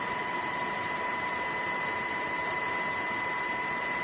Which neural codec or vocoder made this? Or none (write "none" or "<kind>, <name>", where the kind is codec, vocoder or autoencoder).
none